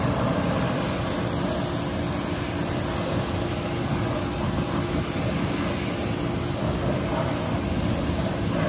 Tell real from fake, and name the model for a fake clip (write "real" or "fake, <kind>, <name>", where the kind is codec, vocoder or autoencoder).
real